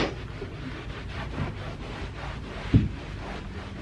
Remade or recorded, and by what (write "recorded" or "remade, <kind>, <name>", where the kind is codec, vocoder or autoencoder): recorded